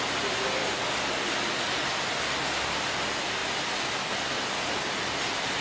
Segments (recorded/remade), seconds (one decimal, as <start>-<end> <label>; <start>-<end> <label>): 0.0-5.6 recorded